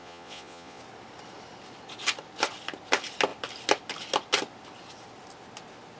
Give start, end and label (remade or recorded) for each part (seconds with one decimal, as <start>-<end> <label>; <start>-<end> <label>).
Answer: 0.0-0.8 remade; 0.8-6.0 recorded